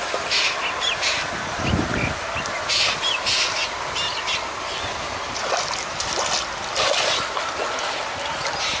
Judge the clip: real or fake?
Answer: fake